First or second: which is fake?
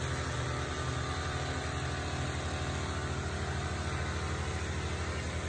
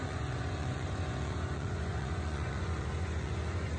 second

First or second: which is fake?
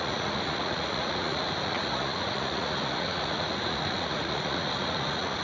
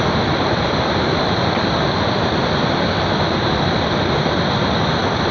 first